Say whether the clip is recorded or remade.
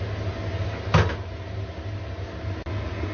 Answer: recorded